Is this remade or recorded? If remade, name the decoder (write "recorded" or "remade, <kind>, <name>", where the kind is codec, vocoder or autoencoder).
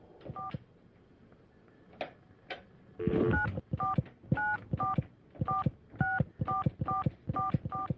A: recorded